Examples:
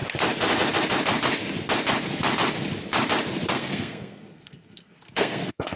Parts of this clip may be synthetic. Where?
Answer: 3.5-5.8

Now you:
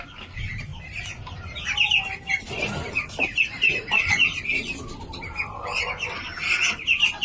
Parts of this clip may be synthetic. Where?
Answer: none

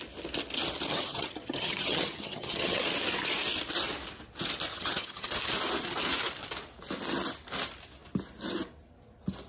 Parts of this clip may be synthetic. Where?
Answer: 0.9-2.8; 4.7-5.3